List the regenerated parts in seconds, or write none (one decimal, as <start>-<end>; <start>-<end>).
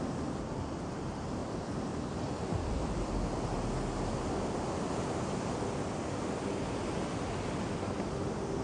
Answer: none